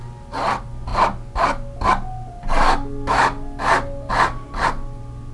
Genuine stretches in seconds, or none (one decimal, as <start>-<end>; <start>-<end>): 0.0-5.3